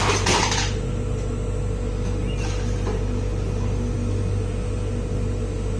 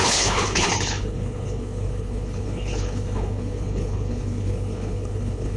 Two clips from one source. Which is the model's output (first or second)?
second